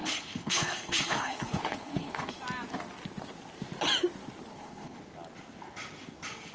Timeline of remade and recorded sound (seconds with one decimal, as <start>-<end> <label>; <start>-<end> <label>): 0.0-2.3 remade; 2.3-4.5 recorded; 4.5-5.0 remade; 5.0-6.5 recorded